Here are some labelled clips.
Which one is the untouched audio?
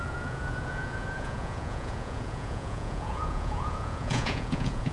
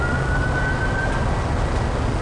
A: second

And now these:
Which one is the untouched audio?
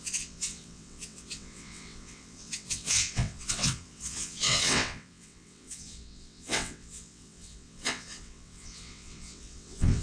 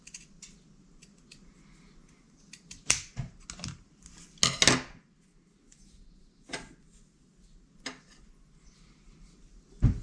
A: second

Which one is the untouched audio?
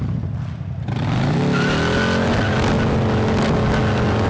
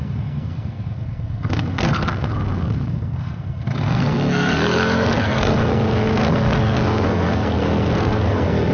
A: first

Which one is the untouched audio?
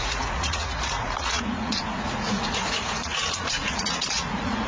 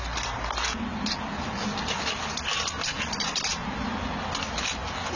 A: second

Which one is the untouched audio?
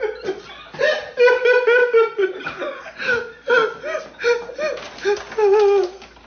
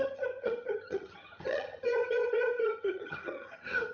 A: first